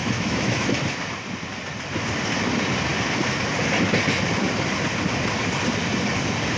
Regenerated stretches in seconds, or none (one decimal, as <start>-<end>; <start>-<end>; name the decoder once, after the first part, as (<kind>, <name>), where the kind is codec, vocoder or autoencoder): 0.0-0.8 (autoencoder, DAC-VAE)